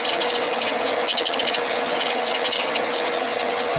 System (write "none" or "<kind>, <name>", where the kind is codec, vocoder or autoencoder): vocoder, HiFi-GAN